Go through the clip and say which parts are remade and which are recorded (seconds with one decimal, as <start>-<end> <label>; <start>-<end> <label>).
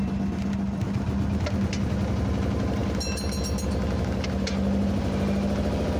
0.0-6.0 recorded